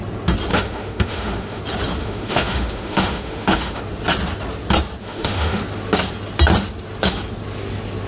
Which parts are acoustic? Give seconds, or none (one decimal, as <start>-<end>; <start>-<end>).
0.0-0.5; 1.6-2.0; 3.8-5.0; 5.6-8.1